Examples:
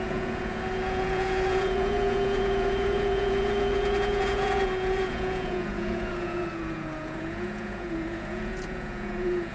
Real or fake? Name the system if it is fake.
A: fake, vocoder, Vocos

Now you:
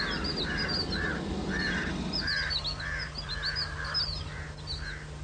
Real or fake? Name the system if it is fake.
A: real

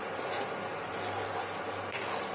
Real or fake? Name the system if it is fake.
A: real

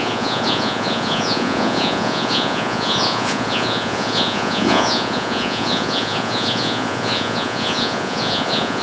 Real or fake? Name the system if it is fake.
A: fake, vocoder, Vocos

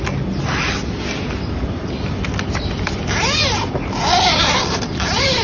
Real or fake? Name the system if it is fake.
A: real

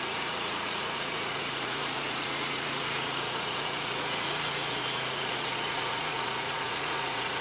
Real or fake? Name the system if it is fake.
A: fake, vocoder, Vocos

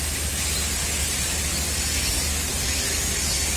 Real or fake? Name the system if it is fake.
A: real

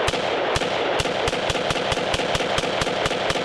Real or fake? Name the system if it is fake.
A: real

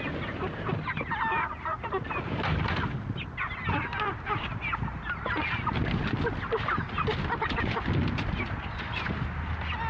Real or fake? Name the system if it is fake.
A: real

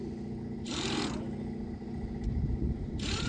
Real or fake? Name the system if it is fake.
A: real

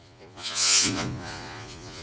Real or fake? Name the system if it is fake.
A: fake, vocoder, Vocos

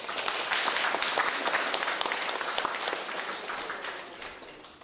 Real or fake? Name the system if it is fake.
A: real